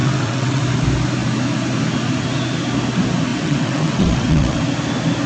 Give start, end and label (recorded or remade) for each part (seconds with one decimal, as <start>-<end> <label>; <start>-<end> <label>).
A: 0.0-0.6 remade; 0.6-3.3 recorded; 3.3-4.6 remade; 4.6-5.3 recorded